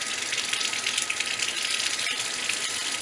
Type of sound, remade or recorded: recorded